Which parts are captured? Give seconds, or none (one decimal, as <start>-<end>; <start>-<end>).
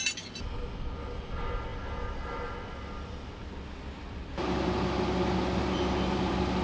0.0-6.6